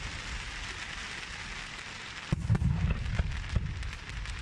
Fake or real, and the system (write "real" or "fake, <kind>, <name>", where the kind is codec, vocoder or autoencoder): real